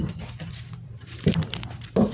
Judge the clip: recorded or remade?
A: remade